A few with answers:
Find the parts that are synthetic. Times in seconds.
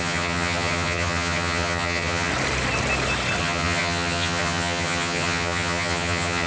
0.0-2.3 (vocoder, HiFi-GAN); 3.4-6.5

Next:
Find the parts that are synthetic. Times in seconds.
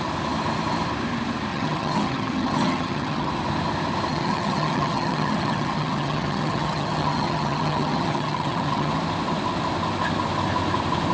1.5-3.3 (vocoder, HiFi-GAN); 4.1-8.9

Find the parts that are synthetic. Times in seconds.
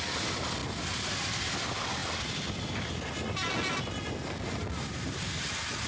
none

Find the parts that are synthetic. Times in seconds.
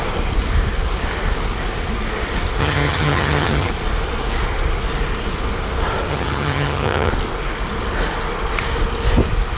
2.6-3.7 (vocoder, HiFi-GAN); 6.1-7.1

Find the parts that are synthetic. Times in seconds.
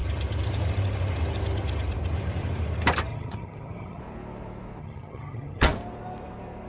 3.1-4.0 (vocoder, HiFi-GAN); 4.8-5.7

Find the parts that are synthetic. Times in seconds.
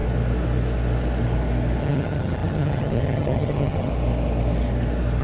1.8-3.9 (vocoder, HiFi-GAN)